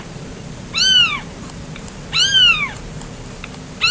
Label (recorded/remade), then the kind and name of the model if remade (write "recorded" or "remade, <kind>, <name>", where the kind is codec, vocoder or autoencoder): recorded